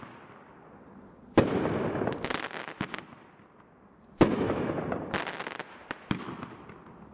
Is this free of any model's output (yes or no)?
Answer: yes